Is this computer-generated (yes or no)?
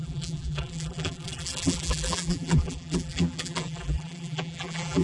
yes